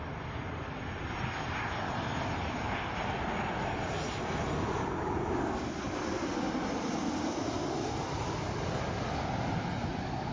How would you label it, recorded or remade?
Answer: recorded